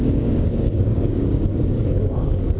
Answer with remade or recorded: remade